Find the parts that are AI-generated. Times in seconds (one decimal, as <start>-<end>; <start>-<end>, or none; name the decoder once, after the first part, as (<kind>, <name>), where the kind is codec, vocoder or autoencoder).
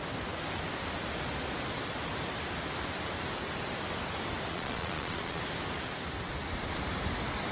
4.5-5.4 (vocoder, Vocos)